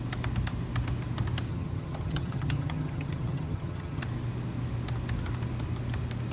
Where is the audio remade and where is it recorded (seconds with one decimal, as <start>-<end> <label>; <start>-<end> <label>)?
0.0-1.5 recorded; 1.5-4.0 remade; 4.0-6.3 recorded

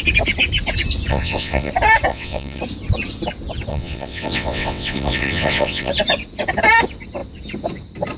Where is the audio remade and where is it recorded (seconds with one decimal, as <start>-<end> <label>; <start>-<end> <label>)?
0.0-1.1 recorded; 1.1-1.7 remade; 1.7-2.1 recorded; 2.1-2.6 remade; 2.6-3.7 recorded; 3.7-5.9 remade; 5.9-8.2 recorded

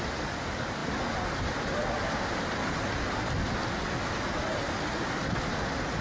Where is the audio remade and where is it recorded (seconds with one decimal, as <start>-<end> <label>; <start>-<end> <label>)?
0.0-6.0 recorded

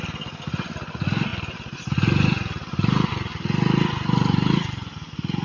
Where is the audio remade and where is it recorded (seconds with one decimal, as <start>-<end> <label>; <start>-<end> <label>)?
0.0-5.4 recorded